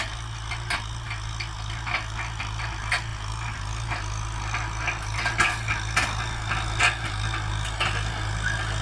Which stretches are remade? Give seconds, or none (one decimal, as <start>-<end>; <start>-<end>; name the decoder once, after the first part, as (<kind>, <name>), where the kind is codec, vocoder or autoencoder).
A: none